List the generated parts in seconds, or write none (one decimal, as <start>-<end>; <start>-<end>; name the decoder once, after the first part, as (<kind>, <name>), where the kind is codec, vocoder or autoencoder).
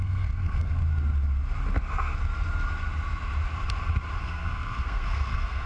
0.0-0.8 (codec, SNAC); 4.2-5.7